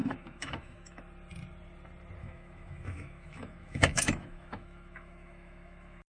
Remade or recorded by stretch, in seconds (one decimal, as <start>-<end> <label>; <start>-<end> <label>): 0.0-1.0 remade; 1.0-2.2 recorded; 2.2-6.1 remade